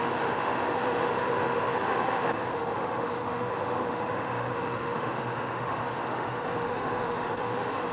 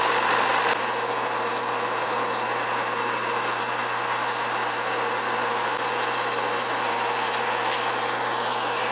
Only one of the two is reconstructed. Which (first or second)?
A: first